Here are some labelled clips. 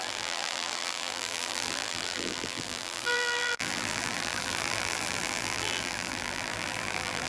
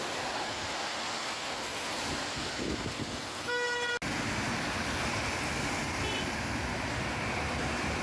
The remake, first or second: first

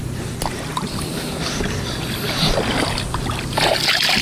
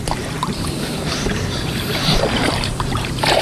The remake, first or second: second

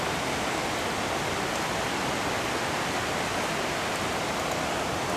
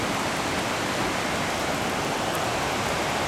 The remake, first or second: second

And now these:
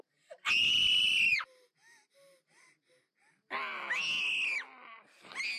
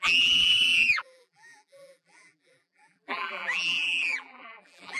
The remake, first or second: second